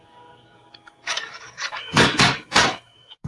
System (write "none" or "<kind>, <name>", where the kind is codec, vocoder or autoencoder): codec, DAC